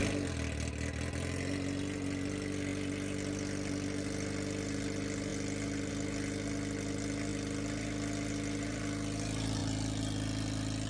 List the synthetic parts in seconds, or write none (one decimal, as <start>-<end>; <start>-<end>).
none